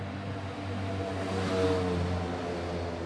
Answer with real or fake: real